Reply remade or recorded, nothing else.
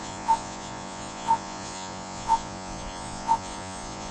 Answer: remade